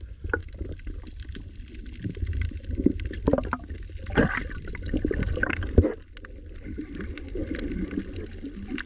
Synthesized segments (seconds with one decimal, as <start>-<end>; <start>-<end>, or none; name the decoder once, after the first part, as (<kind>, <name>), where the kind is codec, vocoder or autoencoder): none

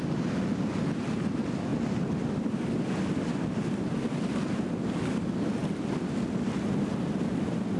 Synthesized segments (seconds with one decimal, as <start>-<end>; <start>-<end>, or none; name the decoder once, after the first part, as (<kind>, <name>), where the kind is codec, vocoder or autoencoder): none

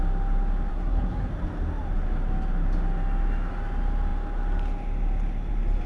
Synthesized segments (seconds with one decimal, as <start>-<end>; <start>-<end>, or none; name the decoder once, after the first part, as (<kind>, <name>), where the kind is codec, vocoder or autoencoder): 0.7-1.3 (codec, SNAC)

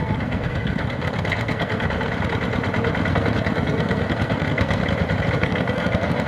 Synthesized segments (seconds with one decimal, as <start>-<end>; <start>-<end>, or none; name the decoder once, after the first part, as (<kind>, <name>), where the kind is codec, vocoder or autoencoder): 0.0-2.1 (codec, SNAC); 3.1-4.8; 5.3-6.3